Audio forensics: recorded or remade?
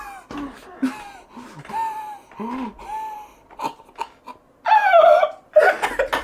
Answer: recorded